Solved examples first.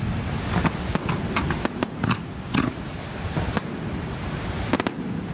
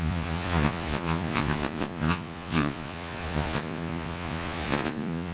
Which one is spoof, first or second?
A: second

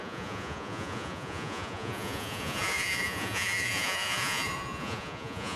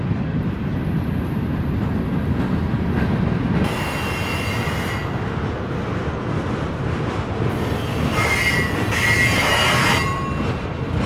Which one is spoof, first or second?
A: first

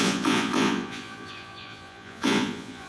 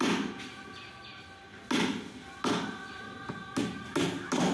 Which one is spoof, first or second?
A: first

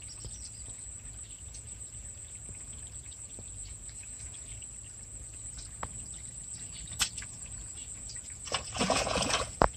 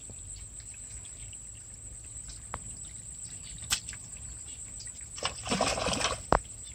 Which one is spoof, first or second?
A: first